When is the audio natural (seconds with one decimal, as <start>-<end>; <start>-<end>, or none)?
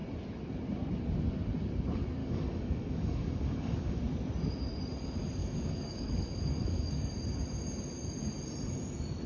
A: 0.0-2.2; 4.0-5.4; 7.1-9.3